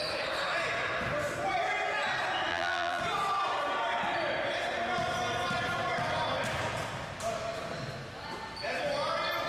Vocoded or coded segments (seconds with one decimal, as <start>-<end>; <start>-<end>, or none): 2.5-3.0